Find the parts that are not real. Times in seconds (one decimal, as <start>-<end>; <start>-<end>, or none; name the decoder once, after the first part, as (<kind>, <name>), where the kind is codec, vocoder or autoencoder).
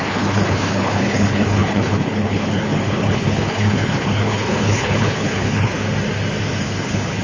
0.0-5.7 (codec, HILCodec); 6.6-7.2